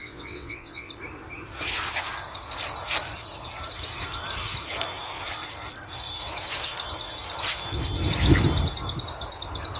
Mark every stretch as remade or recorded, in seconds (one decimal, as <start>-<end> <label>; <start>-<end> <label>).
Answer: 0.0-0.9 remade; 0.9-9.8 recorded